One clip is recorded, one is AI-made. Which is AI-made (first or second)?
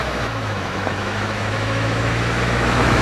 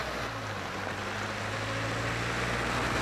first